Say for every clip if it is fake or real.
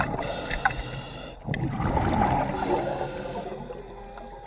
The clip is real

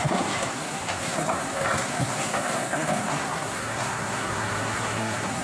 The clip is fake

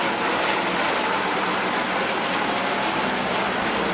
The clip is real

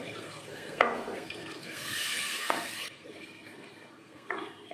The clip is fake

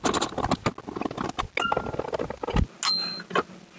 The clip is real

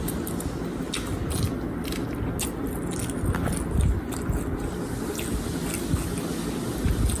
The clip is real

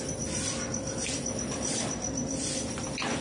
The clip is real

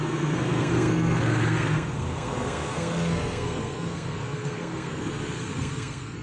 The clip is fake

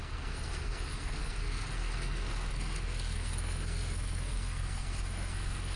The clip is fake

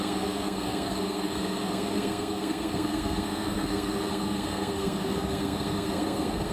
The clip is fake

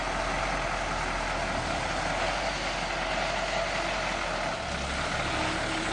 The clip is real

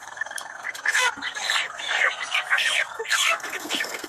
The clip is fake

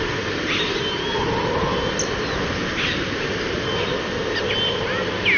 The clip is real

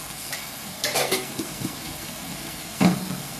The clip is fake